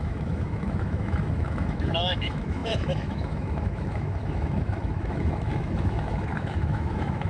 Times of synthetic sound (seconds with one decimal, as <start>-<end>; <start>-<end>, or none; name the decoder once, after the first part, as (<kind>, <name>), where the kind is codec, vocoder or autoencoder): 0.0-7.3 (autoencoder, DAC-VAE)